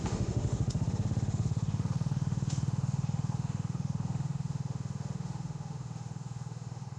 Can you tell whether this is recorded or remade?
remade